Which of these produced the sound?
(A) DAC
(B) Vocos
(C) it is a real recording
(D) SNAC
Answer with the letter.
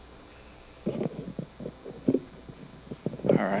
C